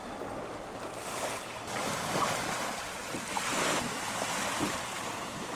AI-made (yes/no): no